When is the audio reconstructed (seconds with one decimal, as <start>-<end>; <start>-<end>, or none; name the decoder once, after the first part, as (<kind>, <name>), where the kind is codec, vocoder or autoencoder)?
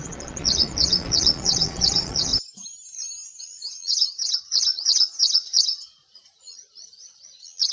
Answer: 0.0-2.3 (vocoder, Vocos); 3.4-7.7